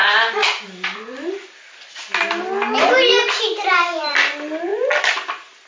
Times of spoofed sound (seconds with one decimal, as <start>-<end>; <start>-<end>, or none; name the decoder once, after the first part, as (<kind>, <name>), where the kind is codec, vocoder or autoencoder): 0.4-1.6 (vocoder, BigVGAN v2); 3.1-4.0; 4.7-5.7